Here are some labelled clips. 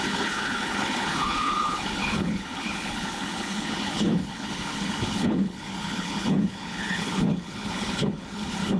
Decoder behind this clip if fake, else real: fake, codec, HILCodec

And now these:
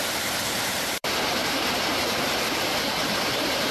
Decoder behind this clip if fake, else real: fake, vocoder, BigVGAN v2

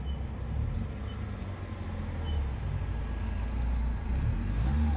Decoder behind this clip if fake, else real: real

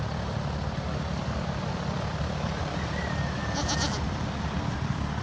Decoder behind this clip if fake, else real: real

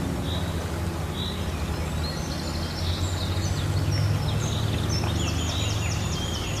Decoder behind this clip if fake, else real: real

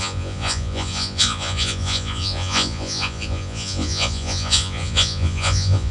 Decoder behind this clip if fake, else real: fake, vocoder, Vocos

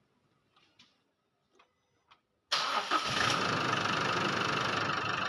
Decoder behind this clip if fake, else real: real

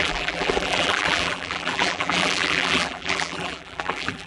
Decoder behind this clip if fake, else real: fake, vocoder, BigVGAN v2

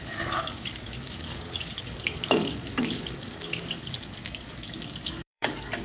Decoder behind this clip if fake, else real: fake, codec, DAC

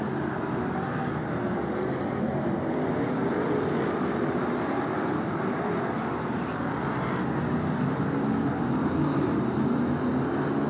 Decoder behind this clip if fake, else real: real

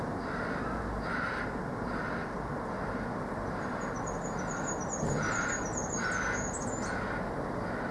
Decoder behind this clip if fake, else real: real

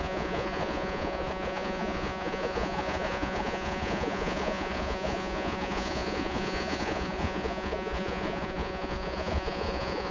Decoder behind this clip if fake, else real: fake, vocoder, Vocos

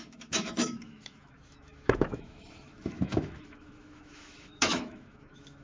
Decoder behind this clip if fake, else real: fake, autoencoder, DAC-VAE